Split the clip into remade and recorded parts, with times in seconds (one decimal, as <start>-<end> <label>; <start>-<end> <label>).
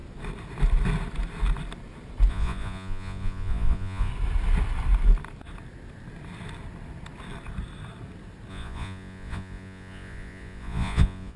0.0-2.3 recorded; 2.3-4.1 remade; 4.1-8.5 recorded; 8.5-11.4 remade